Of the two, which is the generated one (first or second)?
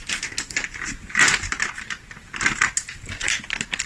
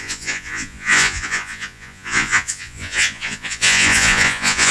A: second